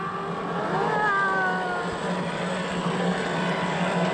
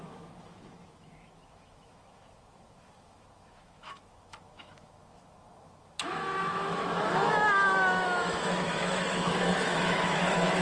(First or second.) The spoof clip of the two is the second